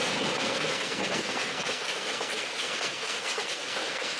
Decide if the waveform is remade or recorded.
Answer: remade